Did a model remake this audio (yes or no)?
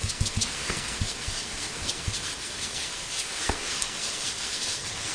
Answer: yes